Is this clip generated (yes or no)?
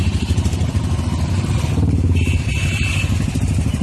no